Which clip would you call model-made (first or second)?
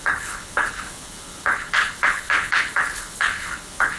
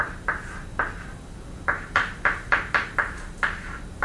first